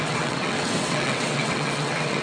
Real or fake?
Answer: fake